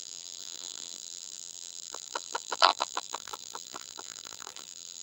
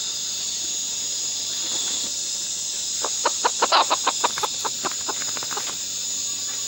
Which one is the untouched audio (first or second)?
second